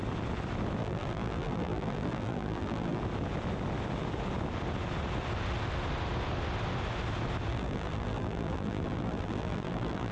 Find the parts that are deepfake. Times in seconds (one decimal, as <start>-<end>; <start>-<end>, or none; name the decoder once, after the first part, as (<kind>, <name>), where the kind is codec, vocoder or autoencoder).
0.8-3.0 (vocoder, BigVGAN v2); 7.5-10.1